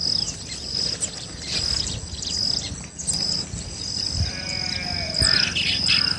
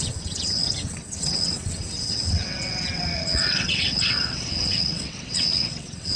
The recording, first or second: first